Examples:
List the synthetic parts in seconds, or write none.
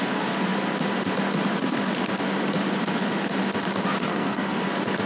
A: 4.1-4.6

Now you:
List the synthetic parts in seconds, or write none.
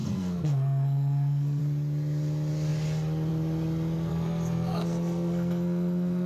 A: 0.0-1.6; 4.1-6.3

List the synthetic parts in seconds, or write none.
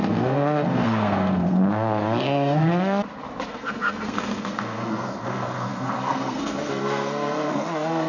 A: 0.0-3.0; 3.5-8.1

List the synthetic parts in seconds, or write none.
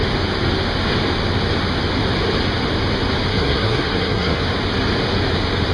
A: 3.3-4.4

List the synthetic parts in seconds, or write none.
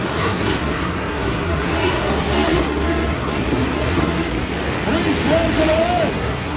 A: 0.0-4.5; 6.1-6.6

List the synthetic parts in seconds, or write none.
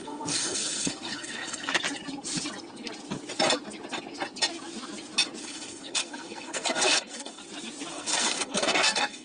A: 0.0-1.7; 5.4-7.4; 7.9-9.2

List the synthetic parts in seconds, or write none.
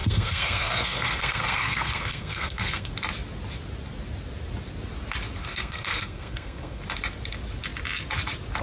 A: 0.0-2.9; 5.4-6.8